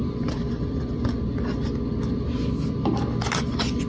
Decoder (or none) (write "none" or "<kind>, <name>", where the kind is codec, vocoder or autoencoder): none